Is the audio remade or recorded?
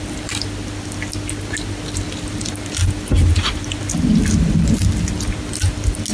recorded